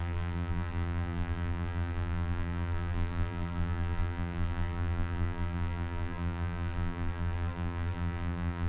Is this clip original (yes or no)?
no